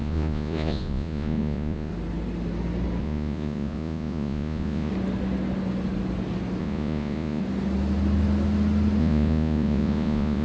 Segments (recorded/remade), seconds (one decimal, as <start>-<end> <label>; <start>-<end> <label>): 0.0-1.9 remade; 1.9-3.0 recorded; 3.0-4.9 remade; 4.9-6.6 recorded; 6.6-7.4 remade; 7.4-9.0 recorded; 9.0-10.4 remade